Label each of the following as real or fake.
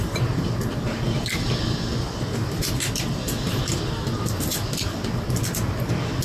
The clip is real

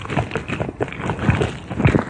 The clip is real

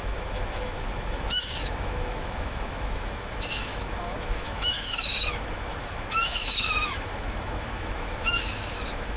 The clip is fake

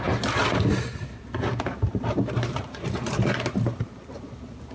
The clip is fake